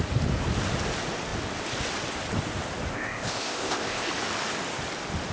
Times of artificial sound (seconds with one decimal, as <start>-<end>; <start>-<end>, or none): 2.9-4.1